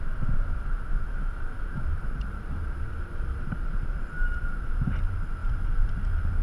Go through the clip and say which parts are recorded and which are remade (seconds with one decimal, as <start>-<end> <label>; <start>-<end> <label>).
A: 0.0-1.2 recorded; 1.2-4.1 remade; 4.1-5.4 recorded; 5.4-6.4 remade